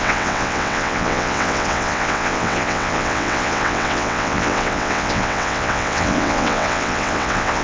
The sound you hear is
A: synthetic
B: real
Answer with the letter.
A